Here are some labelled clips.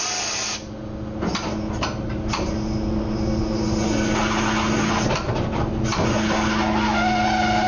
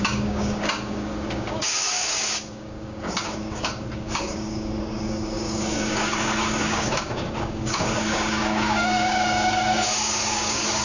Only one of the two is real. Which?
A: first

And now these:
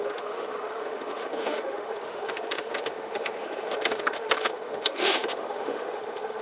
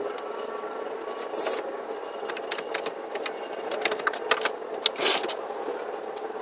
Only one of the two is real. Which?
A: second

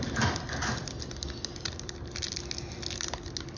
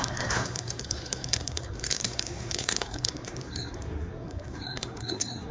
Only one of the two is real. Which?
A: first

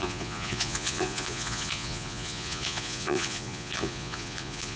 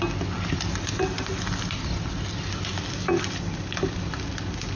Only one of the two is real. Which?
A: second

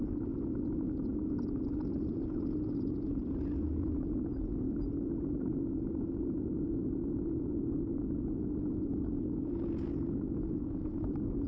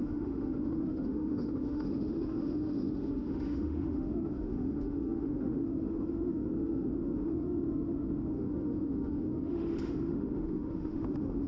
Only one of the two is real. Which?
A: first